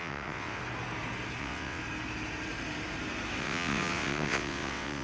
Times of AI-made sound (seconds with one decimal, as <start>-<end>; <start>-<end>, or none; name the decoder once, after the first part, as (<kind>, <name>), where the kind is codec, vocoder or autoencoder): 0.0-0.6 (vocoder, WaveNeXt); 1.4-1.8; 3.4-5.0